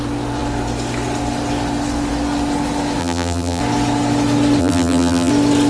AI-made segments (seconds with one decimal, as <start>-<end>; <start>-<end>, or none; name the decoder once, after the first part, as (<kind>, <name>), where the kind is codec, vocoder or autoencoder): 3.0-3.6 (vocoder, BigVGAN v2); 4.6-5.3